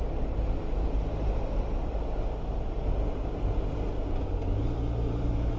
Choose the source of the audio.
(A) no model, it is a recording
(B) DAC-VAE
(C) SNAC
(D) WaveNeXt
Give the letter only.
A